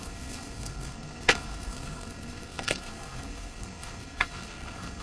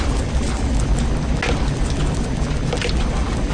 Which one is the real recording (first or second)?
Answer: second